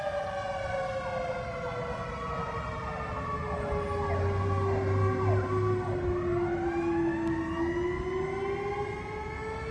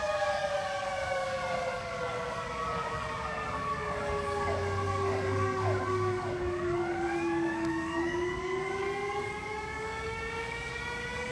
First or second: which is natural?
first